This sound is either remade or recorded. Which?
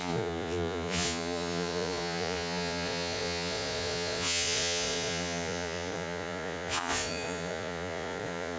remade